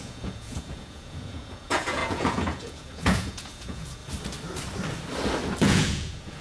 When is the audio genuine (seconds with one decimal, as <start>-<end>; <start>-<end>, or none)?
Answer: 4.0-5.6